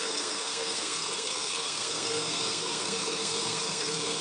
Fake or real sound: fake